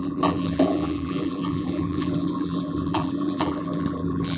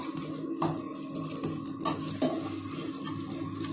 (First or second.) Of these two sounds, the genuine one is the second